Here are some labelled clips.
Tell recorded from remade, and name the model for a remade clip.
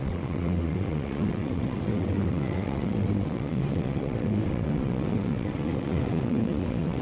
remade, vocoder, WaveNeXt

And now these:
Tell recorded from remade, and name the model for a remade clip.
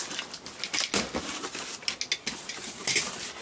recorded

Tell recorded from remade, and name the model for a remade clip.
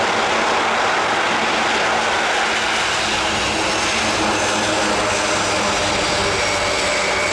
recorded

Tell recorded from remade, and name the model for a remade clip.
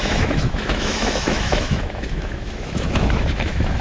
remade, autoencoder, DAC-VAE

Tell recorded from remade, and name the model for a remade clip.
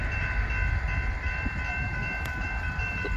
remade, vocoder, BigVGAN v2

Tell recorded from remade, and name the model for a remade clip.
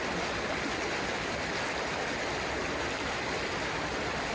recorded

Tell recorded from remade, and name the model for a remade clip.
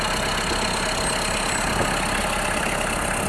recorded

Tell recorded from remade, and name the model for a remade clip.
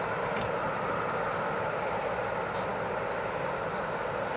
recorded